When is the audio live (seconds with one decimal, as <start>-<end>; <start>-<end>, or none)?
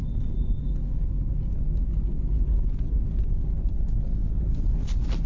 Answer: 0.6-2.4; 3.8-5.3